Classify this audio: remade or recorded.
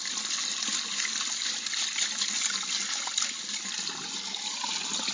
recorded